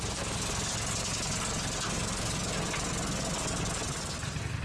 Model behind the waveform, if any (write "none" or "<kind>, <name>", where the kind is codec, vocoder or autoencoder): none